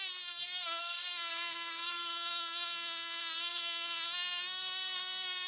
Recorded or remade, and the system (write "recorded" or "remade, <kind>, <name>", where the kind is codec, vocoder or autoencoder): remade, codec, SNAC